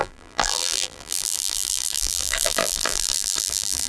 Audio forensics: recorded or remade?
remade